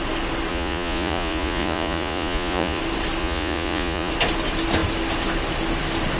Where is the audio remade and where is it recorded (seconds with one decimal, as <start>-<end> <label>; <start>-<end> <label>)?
0.0-0.5 recorded; 0.5-2.8 remade; 2.8-3.2 recorded; 3.2-4.1 remade; 4.1-6.2 recorded